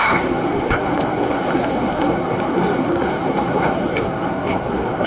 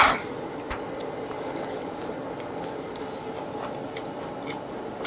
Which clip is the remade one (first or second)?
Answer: first